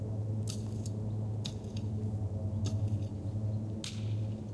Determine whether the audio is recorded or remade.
recorded